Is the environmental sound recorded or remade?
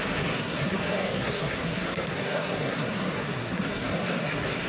remade